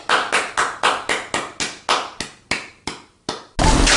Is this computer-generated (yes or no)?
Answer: no